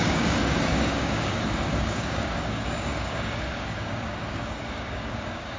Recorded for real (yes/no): no